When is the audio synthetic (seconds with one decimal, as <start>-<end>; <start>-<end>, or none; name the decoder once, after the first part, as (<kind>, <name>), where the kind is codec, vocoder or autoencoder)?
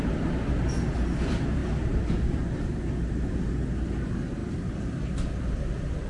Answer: none